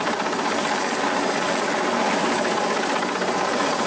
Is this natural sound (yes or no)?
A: yes